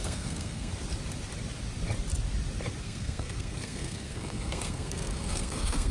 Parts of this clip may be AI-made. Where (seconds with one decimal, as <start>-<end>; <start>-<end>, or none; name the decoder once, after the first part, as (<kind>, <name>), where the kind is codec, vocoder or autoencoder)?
0.0-0.7 (codec, SNAC); 2.8-5.9